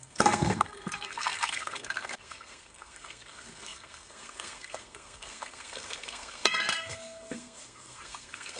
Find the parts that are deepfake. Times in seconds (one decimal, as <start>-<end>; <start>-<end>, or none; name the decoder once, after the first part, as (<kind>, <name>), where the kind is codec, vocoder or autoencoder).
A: 0.0-8.6 (codec, SNAC)